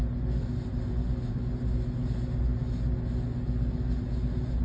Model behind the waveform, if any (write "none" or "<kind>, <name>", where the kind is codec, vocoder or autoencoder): none